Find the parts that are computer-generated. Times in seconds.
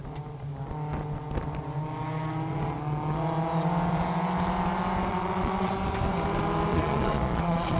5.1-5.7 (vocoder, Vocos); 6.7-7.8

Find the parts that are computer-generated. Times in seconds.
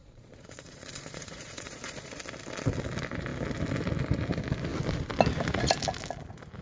0.0-2.2 (vocoder, Vocos)